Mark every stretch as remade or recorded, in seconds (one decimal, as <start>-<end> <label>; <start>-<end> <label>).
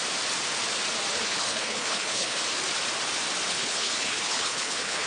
0.0-1.1 recorded; 1.1-2.4 remade; 2.4-3.5 recorded; 3.5-5.1 remade